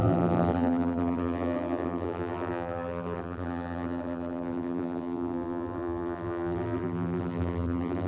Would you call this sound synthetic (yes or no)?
yes